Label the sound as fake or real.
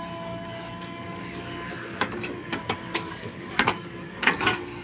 fake